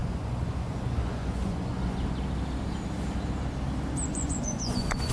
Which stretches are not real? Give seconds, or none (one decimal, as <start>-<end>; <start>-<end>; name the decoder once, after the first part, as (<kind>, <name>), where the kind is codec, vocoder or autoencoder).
0.0-2.0 (vocoder, Vocos); 4.1-5.1